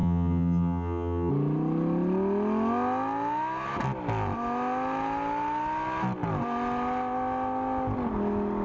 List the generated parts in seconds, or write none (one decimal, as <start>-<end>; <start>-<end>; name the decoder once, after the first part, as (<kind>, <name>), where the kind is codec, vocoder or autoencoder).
0.0-1.3 (vocoder, HiFi-GAN)